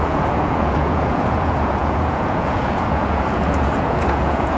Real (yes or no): no